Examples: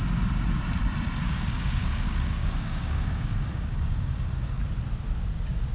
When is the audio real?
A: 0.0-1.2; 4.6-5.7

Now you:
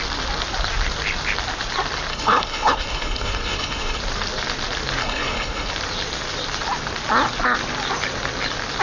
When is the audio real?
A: 0.0-2.1; 4.0-5.0; 5.7-8.8

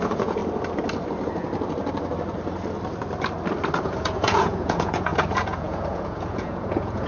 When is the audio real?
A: 0.4-3.8

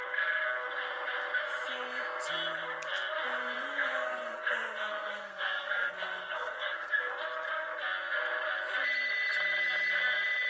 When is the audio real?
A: 0.0-3.4; 7.1-10.5